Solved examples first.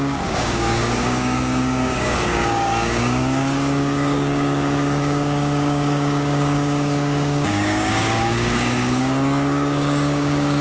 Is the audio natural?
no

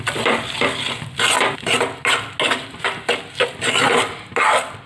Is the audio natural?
yes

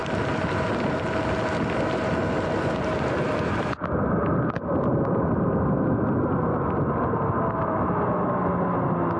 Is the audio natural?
yes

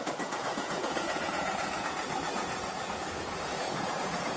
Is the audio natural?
no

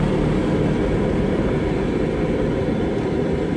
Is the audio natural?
yes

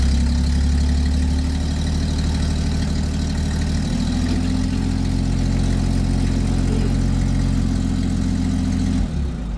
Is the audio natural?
yes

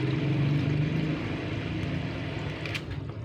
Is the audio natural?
yes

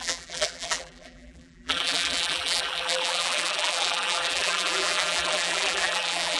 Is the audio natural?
no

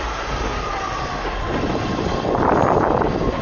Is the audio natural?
no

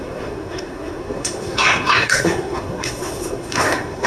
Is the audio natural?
no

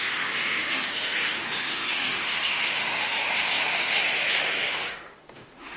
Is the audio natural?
no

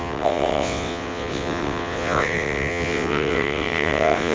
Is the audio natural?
no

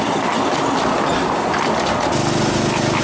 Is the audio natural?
yes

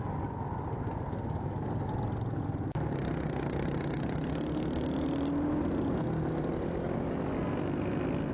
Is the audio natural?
yes